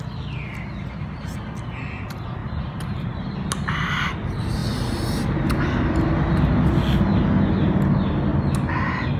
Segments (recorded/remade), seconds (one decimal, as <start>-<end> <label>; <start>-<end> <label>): 0.0-2.4 recorded; 2.4-3.2 remade; 3.2-9.2 recorded